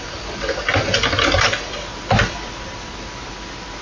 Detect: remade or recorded recorded